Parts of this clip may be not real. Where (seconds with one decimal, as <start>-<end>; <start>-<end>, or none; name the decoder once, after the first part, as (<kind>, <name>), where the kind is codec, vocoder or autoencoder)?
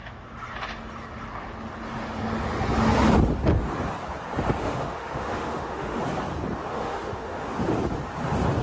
4.6-6.0 (autoencoder, DAC-VAE); 6.7-7.5